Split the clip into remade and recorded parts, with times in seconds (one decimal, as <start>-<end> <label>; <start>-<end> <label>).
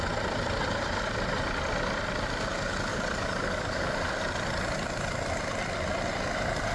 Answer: 0.0-2.9 recorded; 2.9-4.1 remade; 4.1-6.7 recorded